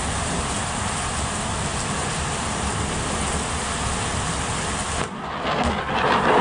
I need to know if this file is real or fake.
real